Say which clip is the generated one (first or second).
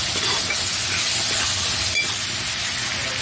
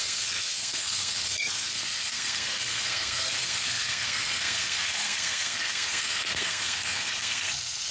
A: second